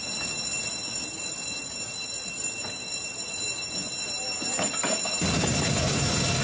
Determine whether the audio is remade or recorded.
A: recorded